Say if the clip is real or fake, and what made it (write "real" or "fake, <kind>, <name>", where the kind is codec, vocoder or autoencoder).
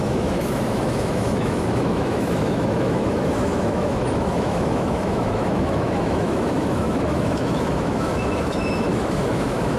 fake, autoencoder, DAC-VAE